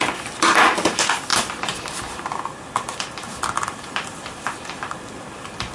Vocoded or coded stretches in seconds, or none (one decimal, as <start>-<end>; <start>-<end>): none